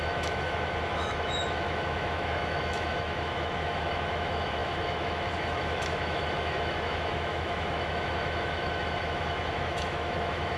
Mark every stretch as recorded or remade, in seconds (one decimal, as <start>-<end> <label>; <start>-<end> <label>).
0.0-10.6 remade